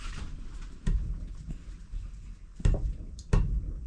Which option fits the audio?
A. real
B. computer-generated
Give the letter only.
B